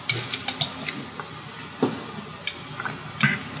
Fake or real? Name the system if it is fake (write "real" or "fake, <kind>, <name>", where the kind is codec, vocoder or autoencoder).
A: real